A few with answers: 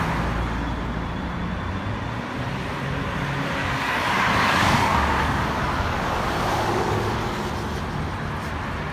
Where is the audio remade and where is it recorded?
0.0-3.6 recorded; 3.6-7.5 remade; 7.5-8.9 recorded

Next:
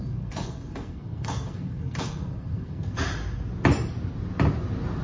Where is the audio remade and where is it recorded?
0.0-3.0 remade; 3.0-5.0 recorded

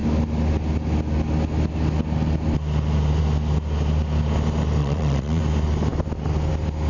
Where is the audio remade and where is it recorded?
0.0-4.8 recorded; 4.8-5.4 remade; 5.4-6.9 recorded

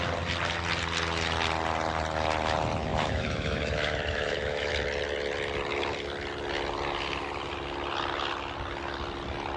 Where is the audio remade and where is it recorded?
0.0-2.9 recorded; 2.9-4.7 remade; 4.7-9.6 recorded

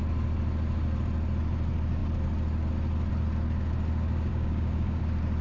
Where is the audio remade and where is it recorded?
0.0-4.3 recorded; 4.3-5.0 remade; 5.0-5.4 recorded

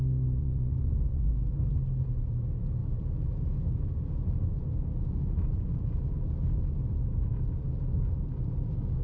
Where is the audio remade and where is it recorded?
0.0-0.4 recorded; 0.4-1.3 remade; 1.3-9.0 recorded

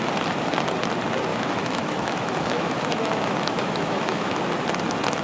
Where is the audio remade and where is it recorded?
0.0-1.3 recorded; 1.3-4.4 remade; 4.4-5.2 recorded

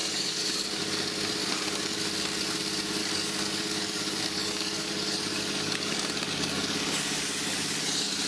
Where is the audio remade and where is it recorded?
0.0-0.8 remade; 0.8-1.4 recorded; 1.4-2.0 remade; 2.0-3.0 recorded; 3.0-8.3 remade